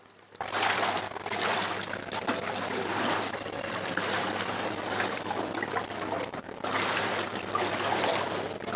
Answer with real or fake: real